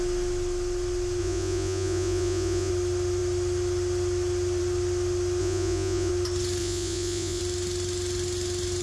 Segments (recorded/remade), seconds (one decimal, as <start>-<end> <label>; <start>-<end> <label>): 0.0-1.2 recorded; 1.2-2.7 remade; 2.7-5.4 recorded; 5.4-6.1 remade; 6.1-6.6 recorded; 6.6-7.4 remade; 7.4-8.8 recorded